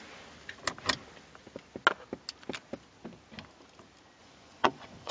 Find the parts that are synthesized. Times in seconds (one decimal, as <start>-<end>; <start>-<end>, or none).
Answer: 4.2-5.1